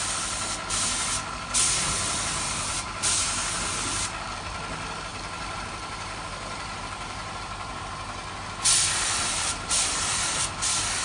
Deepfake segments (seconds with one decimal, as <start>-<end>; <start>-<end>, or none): 2.7-3.5; 5.1-7.7; 8.7-10.5